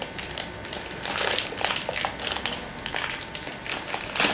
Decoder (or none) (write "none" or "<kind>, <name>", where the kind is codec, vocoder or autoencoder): none